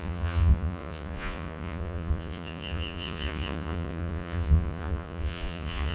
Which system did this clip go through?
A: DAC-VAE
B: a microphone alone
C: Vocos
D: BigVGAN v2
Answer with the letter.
C